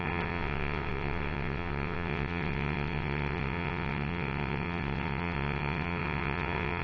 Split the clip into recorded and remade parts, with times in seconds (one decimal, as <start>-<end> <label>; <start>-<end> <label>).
0.0-6.8 remade